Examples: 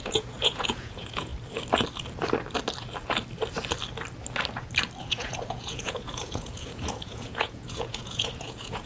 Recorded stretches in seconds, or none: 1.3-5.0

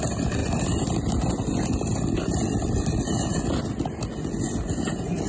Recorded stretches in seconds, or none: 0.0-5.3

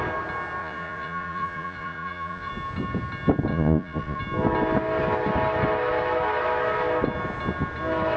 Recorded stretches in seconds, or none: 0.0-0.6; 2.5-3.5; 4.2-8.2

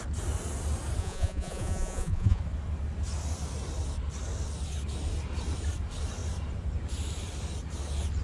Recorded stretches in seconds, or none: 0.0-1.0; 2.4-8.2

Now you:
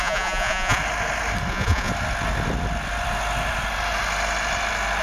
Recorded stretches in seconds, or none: 0.8-1.5; 1.9-5.0

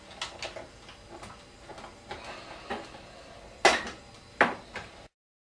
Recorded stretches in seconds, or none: 0.0-5.6

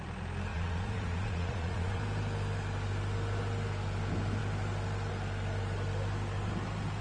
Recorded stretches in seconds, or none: 0.0-0.5; 2.0-7.0

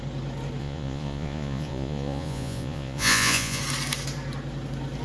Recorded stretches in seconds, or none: 0.0-0.6; 3.6-5.0